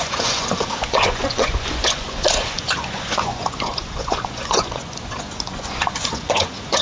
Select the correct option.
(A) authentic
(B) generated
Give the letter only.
B